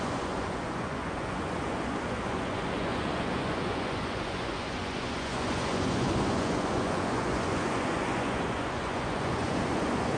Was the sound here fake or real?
fake